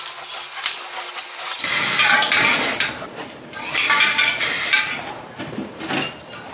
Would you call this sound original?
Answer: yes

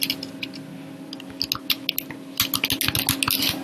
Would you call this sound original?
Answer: yes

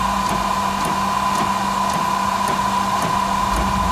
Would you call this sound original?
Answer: yes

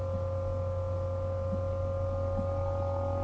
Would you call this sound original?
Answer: yes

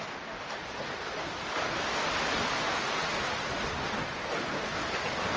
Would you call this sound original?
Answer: yes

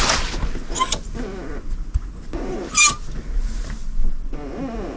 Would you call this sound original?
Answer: yes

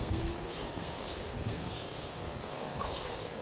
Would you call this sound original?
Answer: no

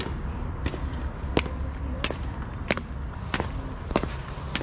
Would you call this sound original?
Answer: yes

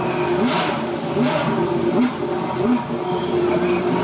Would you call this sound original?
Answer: yes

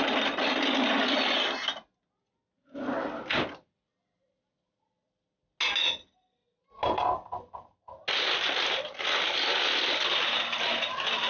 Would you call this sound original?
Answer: yes